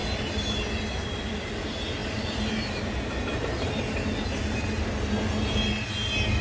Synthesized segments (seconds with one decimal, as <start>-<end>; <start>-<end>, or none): none

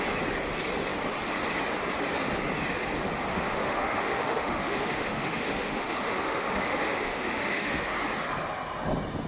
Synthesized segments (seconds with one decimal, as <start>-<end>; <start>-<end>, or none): 3.3-7.9

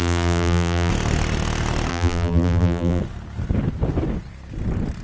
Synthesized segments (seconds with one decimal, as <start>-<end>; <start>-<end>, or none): 0.0-0.9; 1.9-3.0

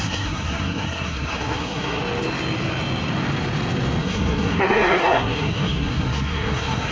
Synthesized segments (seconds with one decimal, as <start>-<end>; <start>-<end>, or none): 0.0-2.0; 4.0-6.9

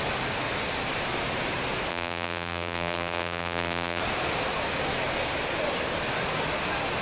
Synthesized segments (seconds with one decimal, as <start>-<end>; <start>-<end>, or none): 1.9-4.0

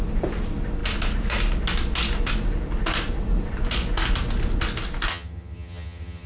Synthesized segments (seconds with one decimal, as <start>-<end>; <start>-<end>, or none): 5.1-6.3